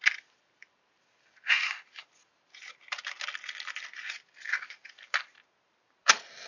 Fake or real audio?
real